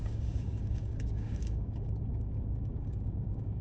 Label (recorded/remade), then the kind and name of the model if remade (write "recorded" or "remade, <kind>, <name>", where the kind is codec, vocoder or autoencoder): remade, codec, DAC